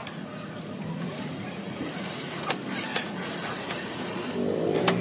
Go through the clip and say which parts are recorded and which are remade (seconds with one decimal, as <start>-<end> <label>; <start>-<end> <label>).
0.0-2.5 remade; 2.5-2.9 recorded; 2.9-4.3 remade; 4.3-5.0 recorded